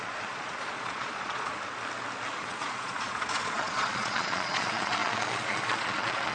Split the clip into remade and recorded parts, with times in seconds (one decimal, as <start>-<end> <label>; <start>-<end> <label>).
0.0-1.5 remade; 1.5-2.4 recorded; 2.4-6.3 remade